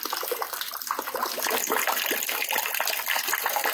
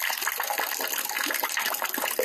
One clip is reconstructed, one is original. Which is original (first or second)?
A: first